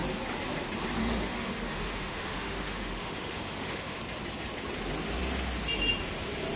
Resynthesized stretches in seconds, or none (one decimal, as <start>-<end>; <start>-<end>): 1.0-4.0